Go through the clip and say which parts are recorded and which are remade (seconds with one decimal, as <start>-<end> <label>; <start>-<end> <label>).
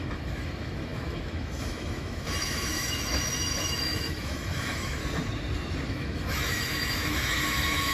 0.0-5.0 remade; 5.0-5.9 recorded; 5.9-7.9 remade